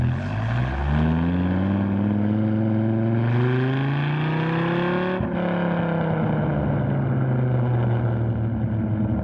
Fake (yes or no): no